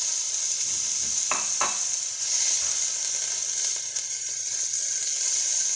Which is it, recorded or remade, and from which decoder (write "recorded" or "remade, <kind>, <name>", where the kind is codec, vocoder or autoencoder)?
recorded